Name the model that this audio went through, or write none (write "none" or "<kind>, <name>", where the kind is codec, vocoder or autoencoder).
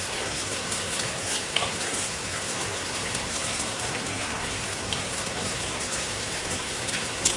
codec, SNAC